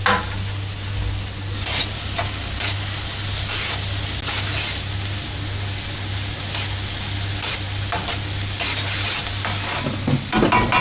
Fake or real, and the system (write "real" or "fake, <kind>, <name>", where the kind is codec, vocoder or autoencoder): real